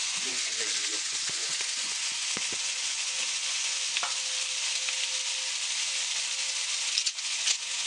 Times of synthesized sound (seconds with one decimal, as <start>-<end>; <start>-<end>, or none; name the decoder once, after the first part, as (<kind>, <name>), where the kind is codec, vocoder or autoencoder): 0.0-3.8 (vocoder, Vocos); 7.0-7.9